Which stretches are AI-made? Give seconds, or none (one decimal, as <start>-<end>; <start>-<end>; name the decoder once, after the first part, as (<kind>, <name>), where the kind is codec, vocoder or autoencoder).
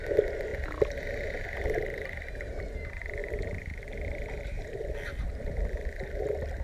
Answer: 3.2-5.6 (vocoder, BigVGAN v2)